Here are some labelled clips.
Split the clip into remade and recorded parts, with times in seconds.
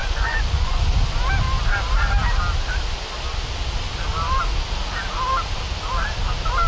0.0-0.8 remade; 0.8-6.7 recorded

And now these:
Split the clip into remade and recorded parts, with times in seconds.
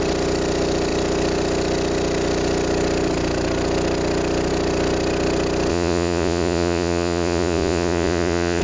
0.0-5.7 recorded; 5.7-8.6 remade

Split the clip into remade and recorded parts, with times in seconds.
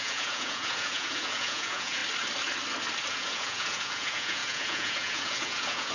0.0-2.0 remade; 2.0-3.1 recorded; 3.1-5.9 remade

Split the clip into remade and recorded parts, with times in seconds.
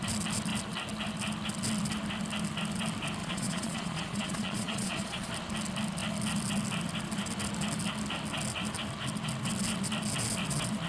0.0-3.2 recorded; 3.2-5.3 remade; 5.3-10.9 recorded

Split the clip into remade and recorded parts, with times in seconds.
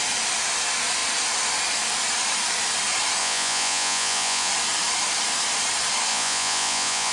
0.0-3.2 recorded; 3.2-4.5 remade; 4.5-6.1 recorded; 6.1-7.1 remade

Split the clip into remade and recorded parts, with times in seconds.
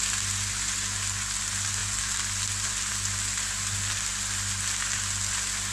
0.0-5.7 recorded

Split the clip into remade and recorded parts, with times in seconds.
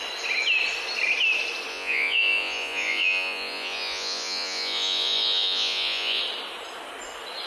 0.0-1.7 recorded; 1.7-6.2 remade; 6.2-7.5 recorded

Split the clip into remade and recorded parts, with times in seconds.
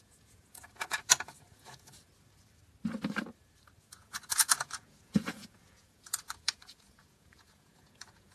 0.0-2.1 remade; 2.1-3.8 recorded; 3.8-8.3 remade